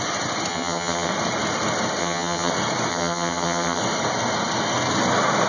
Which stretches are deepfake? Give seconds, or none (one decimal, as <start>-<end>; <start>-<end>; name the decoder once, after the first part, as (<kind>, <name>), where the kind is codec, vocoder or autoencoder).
0.5-1.1 (vocoder, HiFi-GAN); 2.0-2.5; 2.9-3.8